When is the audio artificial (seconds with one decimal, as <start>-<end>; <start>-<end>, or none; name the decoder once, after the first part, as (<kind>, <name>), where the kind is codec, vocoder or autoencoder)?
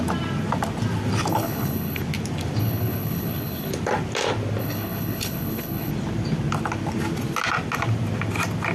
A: 1.3-2.0 (codec, HILCodec); 2.6-3.7; 4.6-5.9